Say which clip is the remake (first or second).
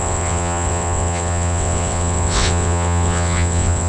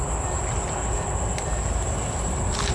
first